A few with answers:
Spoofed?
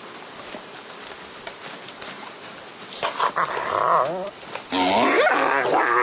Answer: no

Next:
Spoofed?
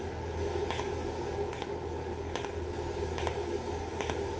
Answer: yes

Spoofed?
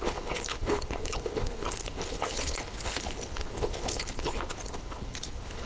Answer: yes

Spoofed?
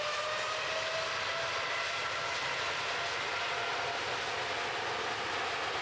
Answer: no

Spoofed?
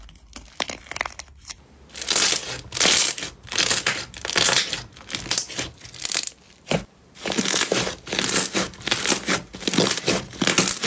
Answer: no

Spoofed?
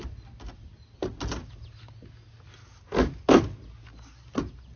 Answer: no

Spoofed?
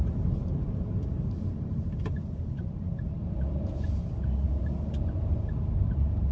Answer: yes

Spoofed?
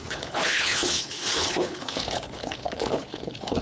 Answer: yes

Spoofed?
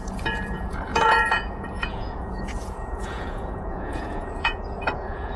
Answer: yes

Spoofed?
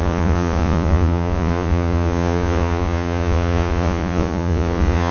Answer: yes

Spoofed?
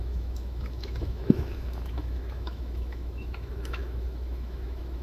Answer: yes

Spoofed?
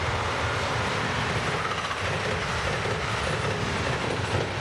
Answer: no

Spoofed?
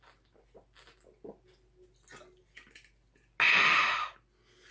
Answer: no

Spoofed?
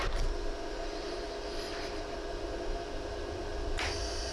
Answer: no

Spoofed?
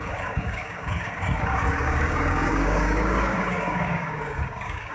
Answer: yes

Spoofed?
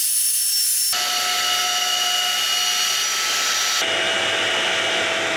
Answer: no